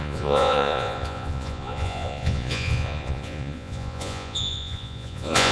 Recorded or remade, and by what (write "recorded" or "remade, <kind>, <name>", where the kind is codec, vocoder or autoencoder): remade, vocoder, Vocos